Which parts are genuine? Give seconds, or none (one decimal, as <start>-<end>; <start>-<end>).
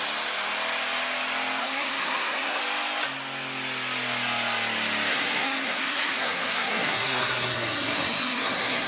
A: 0.0-1.6; 2.6-5.1